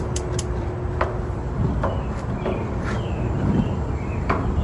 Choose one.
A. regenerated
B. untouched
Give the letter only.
A